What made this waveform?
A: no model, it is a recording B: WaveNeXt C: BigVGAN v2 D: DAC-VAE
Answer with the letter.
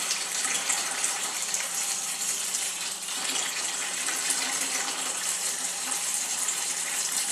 C